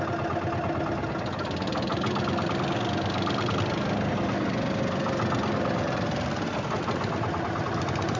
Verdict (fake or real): real